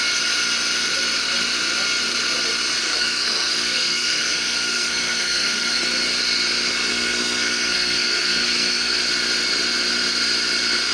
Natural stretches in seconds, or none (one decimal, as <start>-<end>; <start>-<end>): 0.0-2.8; 5.8-6.9; 9.0-10.9